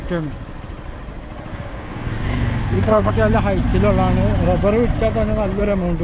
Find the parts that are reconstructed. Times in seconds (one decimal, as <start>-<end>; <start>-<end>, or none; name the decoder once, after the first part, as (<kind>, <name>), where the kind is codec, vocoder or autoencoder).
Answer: 1.5-3.1 (codec, DAC)